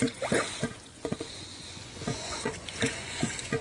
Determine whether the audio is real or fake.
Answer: fake